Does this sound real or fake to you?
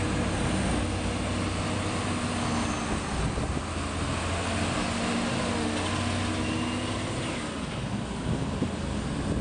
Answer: real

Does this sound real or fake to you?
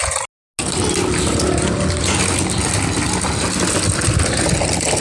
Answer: real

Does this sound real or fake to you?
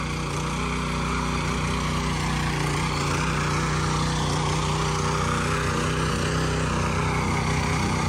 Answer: real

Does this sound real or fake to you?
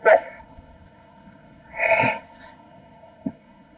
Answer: fake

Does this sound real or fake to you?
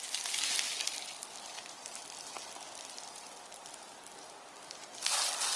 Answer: real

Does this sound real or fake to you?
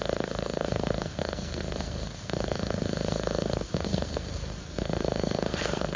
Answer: fake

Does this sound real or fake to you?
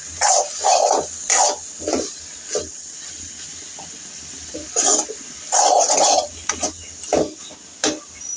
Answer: real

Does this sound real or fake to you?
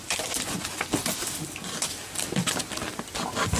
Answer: real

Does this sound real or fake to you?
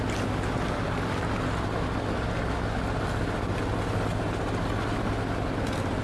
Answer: real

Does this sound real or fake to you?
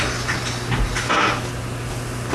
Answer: real